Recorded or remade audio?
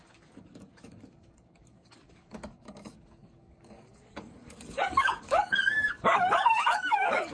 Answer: remade